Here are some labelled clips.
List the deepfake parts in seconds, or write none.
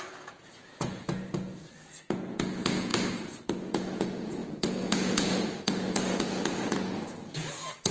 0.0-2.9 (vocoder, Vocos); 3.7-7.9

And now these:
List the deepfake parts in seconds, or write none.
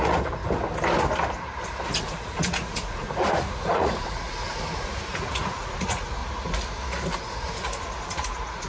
0.0-0.4 (vocoder, Vocos); 2.0-6.2; 7.2-8.7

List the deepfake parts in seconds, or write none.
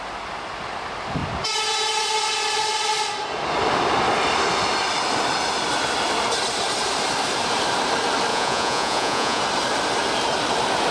8.3-9.4 (vocoder, Vocos)